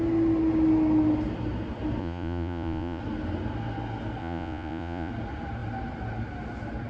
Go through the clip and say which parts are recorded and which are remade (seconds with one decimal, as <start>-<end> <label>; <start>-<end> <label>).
0.0-2.0 recorded; 2.0-3.0 remade; 3.0-4.2 recorded; 4.2-5.1 remade; 5.1-6.9 recorded